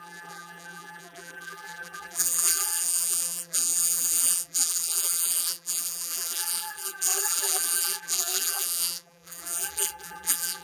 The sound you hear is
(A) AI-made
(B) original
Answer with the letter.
A